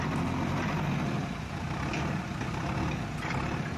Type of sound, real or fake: real